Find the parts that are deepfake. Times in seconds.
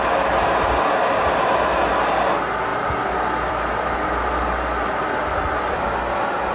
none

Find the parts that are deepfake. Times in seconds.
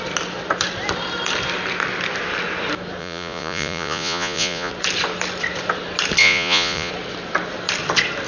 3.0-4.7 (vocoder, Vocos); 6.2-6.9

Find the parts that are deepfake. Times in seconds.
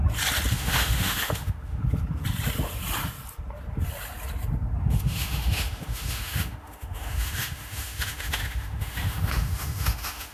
0.5-1.8 (autoencoder, DAC-VAE); 4.8-10.3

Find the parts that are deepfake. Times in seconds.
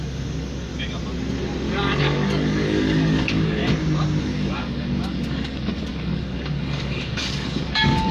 0.0-0.7 (codec, DAC); 2.0-3.6; 4.2-8.1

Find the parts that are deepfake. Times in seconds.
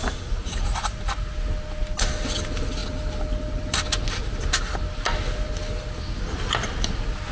0.0-1.0 (vocoder, Vocos)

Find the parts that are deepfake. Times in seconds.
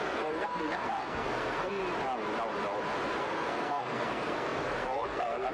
0.0-1.8 (codec, SNAC); 3.2-5.5